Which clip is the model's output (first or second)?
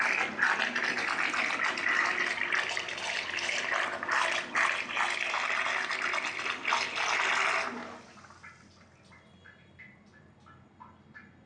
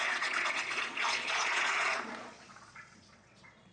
second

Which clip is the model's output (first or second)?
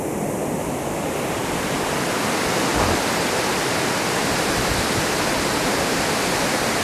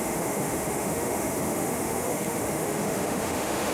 second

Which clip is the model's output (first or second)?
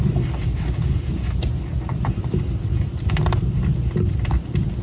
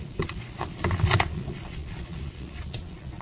second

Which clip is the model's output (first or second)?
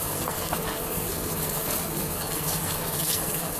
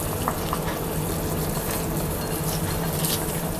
first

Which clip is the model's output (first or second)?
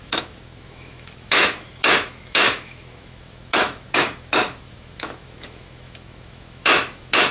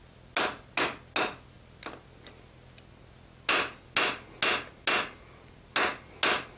first